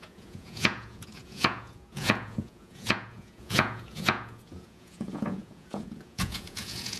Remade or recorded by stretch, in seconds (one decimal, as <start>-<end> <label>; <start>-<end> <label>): 0.0-7.0 remade